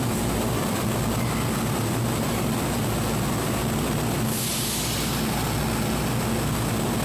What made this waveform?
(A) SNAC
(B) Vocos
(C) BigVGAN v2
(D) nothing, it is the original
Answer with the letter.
D